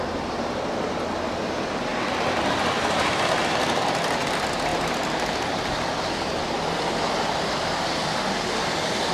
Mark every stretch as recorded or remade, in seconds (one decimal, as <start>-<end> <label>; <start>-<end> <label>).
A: 0.0-1.9 recorded; 1.9-3.6 remade; 3.6-9.1 recorded